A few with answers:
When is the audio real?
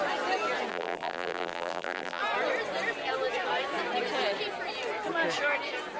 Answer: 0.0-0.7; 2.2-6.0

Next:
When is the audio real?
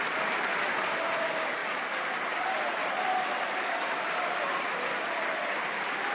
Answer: 0.0-6.1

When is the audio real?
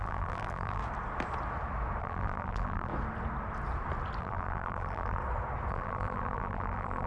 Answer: 0.8-2.0; 2.9-4.2; 5.2-5.7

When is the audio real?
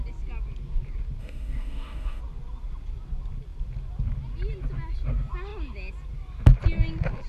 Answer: 0.0-1.2; 2.2-7.3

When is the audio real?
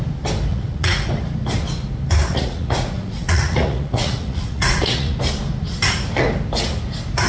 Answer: 0.0-0.5; 1.1-2.3; 5.2-7.3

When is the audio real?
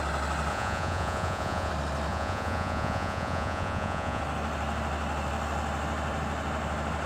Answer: 0.0-0.5; 1.7-2.1; 4.2-7.1